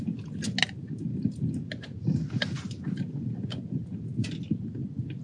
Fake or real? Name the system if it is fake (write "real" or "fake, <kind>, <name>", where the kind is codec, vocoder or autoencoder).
real